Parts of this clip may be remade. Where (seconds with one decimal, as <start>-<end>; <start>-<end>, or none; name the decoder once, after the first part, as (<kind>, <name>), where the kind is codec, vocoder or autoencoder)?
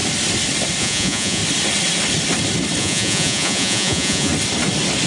0.8-1.4 (vocoder, Vocos); 2.8-4.3